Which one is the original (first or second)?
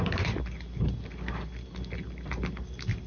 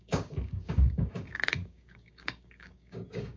first